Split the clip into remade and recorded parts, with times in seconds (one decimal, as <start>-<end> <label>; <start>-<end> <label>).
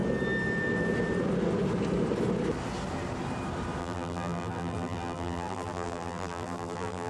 0.0-3.8 recorded; 3.8-7.1 remade